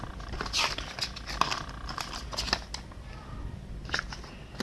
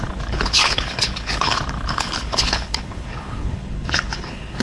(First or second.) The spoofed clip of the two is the second